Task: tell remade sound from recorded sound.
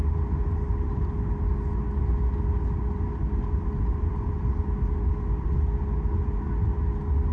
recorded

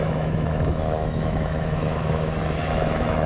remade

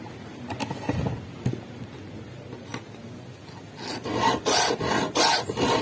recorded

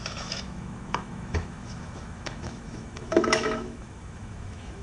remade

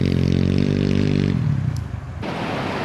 recorded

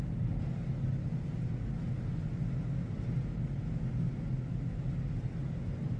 recorded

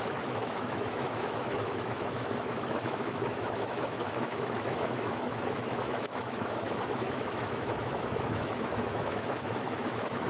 remade